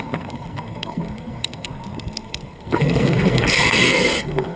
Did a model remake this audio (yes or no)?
yes